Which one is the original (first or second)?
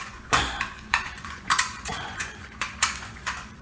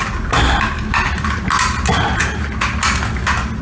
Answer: second